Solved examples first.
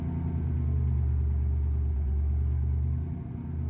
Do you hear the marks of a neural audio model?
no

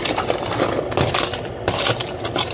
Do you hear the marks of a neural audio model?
no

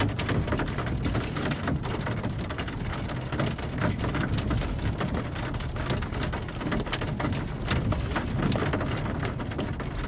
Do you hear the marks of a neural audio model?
no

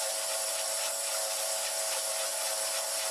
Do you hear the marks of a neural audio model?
no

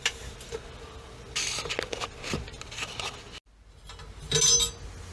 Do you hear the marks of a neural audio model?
no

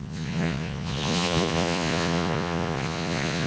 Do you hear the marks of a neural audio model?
yes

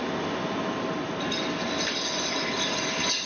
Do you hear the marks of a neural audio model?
no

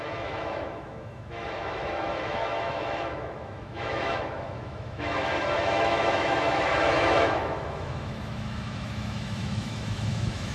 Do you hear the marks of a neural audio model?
yes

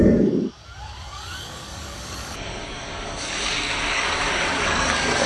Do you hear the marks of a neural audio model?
yes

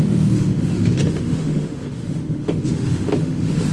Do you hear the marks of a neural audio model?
yes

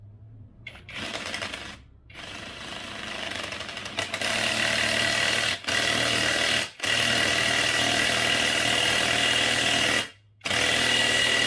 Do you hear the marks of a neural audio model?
no